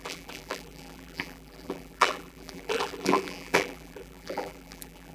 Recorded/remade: remade